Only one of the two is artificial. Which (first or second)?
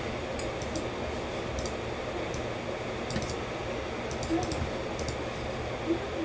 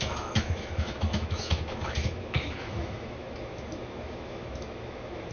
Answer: second